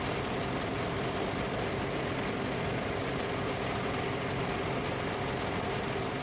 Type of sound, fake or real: real